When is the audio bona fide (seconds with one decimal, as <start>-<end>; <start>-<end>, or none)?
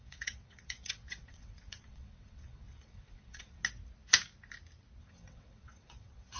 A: 3.6-5.0